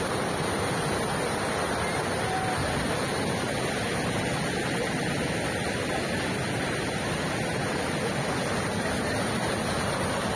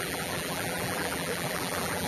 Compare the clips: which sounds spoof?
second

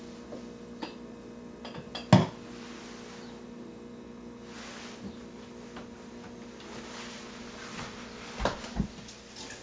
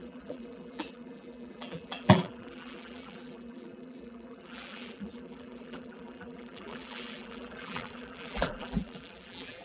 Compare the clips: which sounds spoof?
second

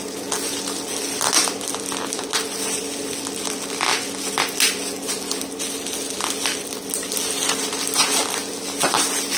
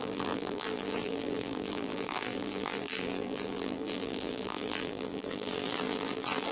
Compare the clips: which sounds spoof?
second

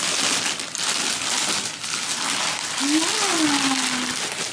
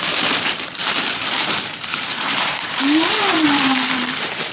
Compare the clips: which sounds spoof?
second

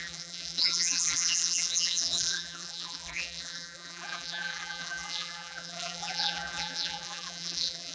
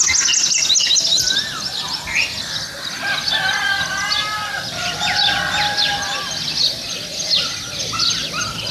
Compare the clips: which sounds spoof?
first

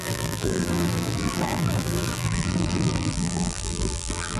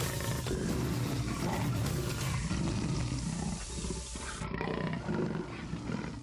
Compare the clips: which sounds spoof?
first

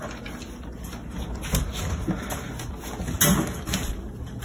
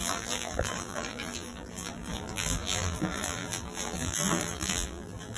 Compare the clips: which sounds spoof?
second